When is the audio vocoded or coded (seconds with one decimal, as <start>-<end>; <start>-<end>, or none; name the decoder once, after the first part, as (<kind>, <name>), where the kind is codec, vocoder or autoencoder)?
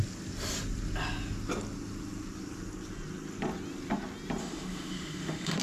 4.4-5.6 (autoencoder, DAC-VAE)